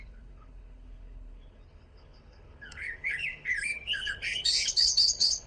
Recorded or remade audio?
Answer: remade